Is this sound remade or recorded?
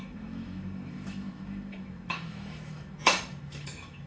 remade